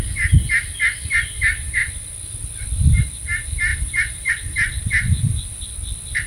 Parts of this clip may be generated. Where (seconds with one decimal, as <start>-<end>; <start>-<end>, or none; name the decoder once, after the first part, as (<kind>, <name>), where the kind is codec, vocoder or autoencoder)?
3.7-4.3 (vocoder, BigVGAN v2)